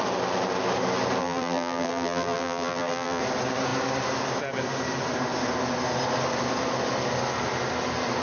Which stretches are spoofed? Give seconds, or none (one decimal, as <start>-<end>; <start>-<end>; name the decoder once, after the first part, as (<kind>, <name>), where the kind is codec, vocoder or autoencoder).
1.2-3.2 (vocoder, BigVGAN v2)